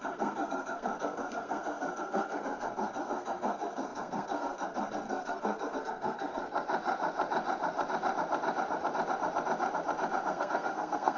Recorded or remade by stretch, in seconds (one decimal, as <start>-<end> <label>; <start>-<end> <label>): 0.0-6.4 remade; 6.4-10.3 recorded; 10.3-11.2 remade